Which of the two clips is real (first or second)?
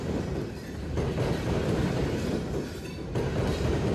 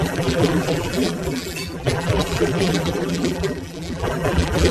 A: first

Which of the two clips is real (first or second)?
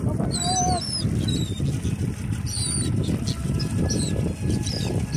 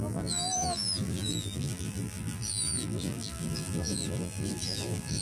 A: first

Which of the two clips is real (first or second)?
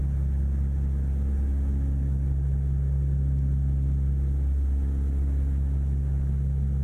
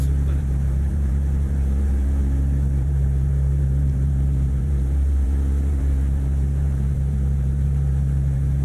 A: first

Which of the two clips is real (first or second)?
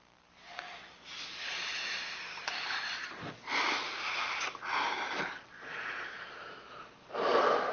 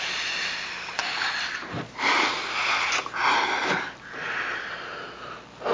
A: second